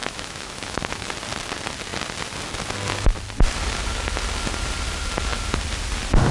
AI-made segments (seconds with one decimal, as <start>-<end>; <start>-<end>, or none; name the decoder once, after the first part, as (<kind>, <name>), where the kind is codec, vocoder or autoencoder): 0.0-1.1 (autoencoder, DAC-VAE)